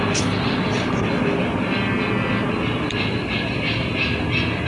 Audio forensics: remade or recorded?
recorded